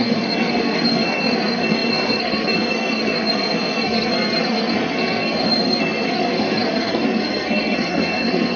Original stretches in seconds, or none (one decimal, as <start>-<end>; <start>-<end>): none